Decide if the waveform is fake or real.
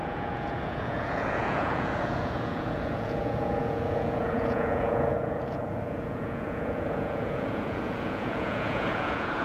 fake